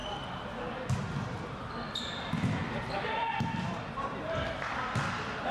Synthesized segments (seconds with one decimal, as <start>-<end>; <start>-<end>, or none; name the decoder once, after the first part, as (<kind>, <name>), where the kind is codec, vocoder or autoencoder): 0.0-3.3 (vocoder, BigVGAN v2); 4.1-4.7